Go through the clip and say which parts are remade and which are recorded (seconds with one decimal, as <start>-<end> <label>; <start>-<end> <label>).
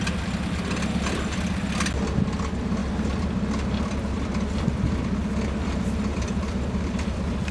0.0-7.5 recorded